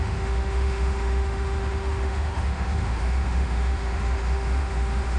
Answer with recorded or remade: remade